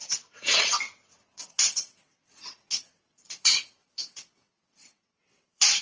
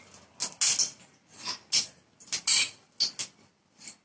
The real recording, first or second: second